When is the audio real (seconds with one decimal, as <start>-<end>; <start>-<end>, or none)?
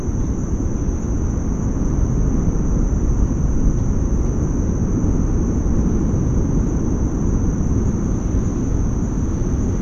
0.0-9.8